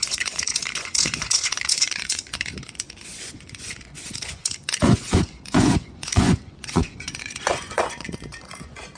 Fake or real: fake